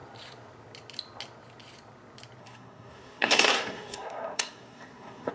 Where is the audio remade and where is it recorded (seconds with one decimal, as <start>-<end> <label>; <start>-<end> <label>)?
0.0-2.4 recorded; 2.4-5.3 remade